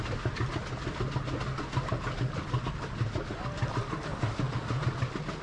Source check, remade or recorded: recorded